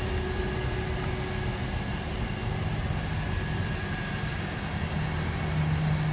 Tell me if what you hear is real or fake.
real